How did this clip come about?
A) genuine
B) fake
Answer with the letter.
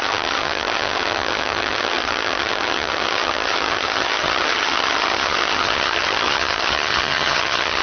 B